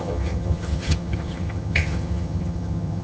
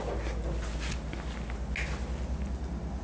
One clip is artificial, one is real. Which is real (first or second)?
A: second